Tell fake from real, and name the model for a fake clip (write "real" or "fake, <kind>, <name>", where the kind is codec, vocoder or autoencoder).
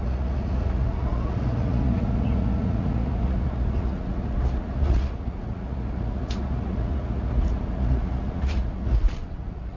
fake, vocoder, Vocos